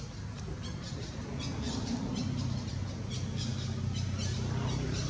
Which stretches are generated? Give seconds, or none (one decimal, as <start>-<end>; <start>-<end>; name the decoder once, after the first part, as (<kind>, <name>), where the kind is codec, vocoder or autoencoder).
none